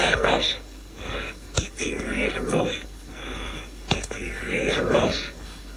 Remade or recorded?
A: remade